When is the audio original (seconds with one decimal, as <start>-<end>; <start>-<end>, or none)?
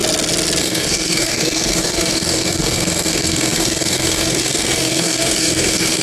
0.0-0.6